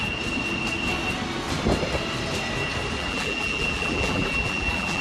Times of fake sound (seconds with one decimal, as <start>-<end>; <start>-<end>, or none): 3.0-5.0